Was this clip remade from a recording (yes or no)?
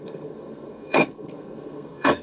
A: yes